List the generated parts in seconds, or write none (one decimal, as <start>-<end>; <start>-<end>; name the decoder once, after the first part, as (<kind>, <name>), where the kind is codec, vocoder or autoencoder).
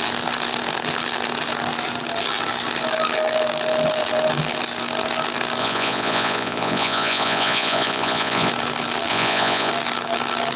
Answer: 5.6-8.5 (vocoder, Vocos); 9.1-9.7